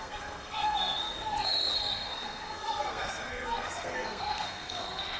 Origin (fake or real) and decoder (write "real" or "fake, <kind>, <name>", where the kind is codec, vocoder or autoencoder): fake, codec, SNAC